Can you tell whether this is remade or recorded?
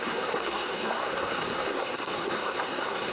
remade